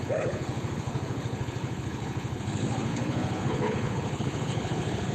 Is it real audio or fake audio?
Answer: fake